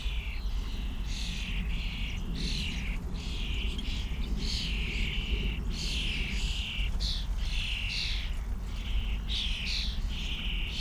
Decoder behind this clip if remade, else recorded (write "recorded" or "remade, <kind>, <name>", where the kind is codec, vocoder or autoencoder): recorded